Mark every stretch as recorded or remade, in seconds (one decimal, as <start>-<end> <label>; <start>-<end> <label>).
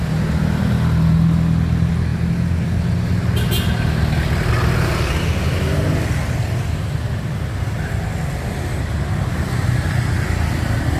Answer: 0.0-11.0 recorded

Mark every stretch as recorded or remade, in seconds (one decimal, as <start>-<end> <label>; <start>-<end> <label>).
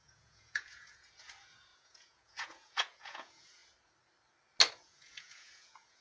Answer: 0.0-3.6 remade; 3.6-4.7 recorded; 4.7-6.0 remade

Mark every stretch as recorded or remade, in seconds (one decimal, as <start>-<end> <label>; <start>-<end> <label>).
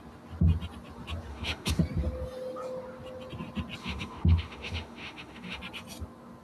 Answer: 0.0-1.3 recorded; 1.3-1.8 remade; 1.8-3.8 recorded; 3.8-5.6 remade; 5.6-6.4 recorded